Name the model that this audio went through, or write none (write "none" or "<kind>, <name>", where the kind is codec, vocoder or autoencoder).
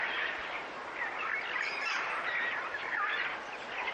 none